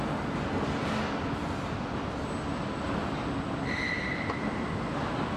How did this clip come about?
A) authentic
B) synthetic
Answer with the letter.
A